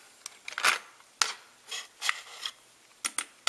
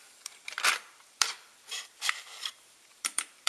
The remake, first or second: second